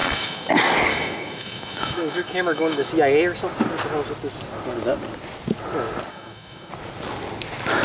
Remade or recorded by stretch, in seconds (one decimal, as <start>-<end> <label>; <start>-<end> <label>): 0.0-0.5 remade; 0.5-0.9 recorded; 0.9-2.9 remade; 2.9-6.1 recorded; 6.1-6.7 remade; 6.7-7.8 recorded